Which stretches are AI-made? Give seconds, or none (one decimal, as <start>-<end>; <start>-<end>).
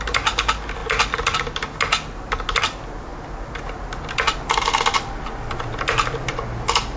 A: none